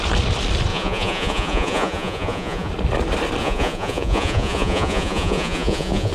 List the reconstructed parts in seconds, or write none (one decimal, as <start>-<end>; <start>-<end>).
0.7-2.7; 3.4-6.1